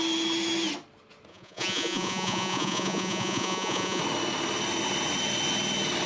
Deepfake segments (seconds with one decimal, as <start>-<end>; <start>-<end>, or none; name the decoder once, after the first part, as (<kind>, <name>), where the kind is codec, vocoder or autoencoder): 1.3-4.0 (vocoder, Vocos)